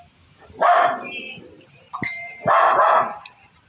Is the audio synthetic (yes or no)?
no